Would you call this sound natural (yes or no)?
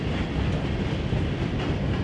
yes